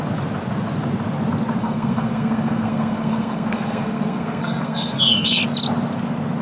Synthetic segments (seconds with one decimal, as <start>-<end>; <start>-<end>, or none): 1.6-5.4